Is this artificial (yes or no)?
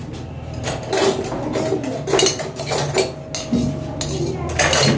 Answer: no